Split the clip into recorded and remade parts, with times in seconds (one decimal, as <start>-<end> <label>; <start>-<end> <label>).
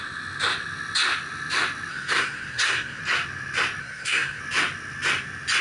0.0-1.9 recorded; 1.9-3.0 remade; 3.0-3.8 recorded; 3.8-4.4 remade; 4.4-5.6 recorded